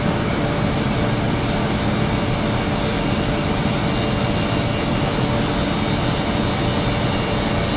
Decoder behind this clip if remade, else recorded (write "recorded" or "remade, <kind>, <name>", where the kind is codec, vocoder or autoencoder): recorded